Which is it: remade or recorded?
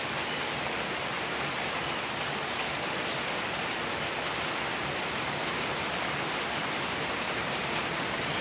recorded